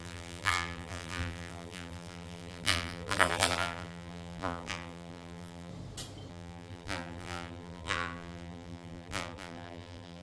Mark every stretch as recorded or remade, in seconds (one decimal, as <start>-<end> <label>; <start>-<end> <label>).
0.0-5.7 remade; 5.7-6.3 recorded; 6.3-10.2 remade